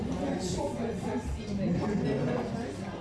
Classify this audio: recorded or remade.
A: recorded